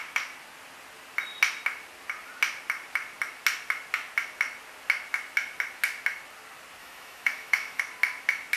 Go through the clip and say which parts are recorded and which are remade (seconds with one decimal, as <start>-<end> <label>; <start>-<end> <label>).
0.0-6.8 recorded; 6.8-7.8 remade; 7.8-8.6 recorded